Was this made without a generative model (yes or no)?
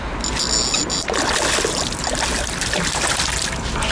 yes